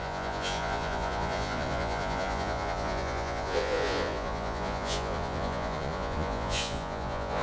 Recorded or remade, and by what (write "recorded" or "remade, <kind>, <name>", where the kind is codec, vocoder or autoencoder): remade, vocoder, Vocos